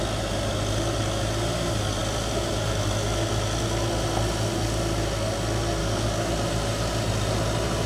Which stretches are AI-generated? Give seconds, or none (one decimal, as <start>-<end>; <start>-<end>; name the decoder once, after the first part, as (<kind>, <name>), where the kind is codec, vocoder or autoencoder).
5.8-6.3 (codec, DAC)